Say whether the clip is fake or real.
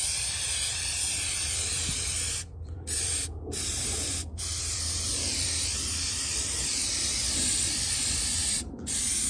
fake